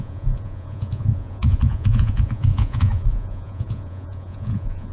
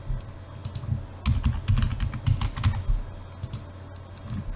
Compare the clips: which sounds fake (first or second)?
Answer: first